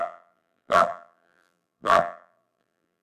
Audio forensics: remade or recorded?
remade